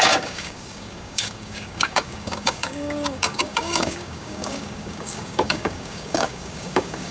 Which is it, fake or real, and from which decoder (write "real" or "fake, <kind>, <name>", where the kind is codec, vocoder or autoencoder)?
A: fake, codec, DAC